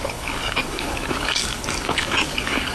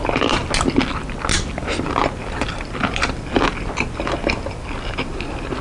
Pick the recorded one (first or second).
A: second